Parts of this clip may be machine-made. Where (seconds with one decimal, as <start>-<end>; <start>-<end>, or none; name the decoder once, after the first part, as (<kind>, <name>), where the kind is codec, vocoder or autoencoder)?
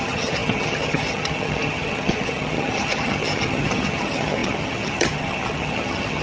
0.0-6.2 (vocoder, HiFi-GAN)